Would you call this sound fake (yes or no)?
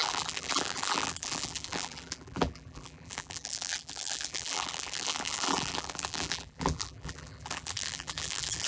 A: yes